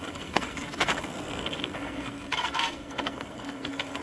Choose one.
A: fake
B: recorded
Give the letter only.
A